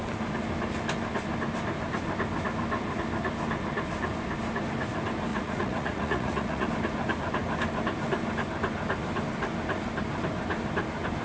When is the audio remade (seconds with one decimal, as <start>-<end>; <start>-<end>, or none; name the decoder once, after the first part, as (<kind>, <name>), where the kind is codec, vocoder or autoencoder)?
5.3-6.7 (vocoder, Vocos)